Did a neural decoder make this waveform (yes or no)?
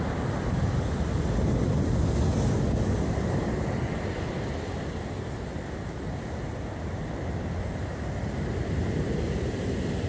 no